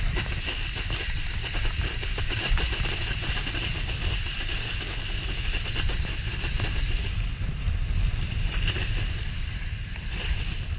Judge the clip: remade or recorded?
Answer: recorded